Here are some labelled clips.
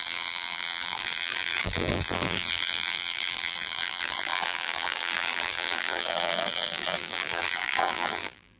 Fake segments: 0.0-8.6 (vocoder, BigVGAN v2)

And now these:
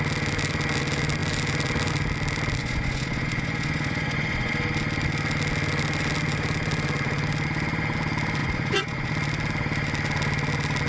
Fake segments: 2.6-4.5 (vocoder, Vocos); 8.4-9.1

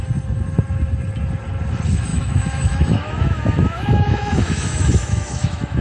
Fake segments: 2.1-5.8 (autoencoder, DAC-VAE)

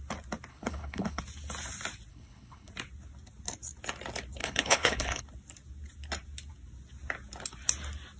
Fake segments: 0.5-1.2 (codec, HILCodec); 2.1-2.7; 4.4-5.2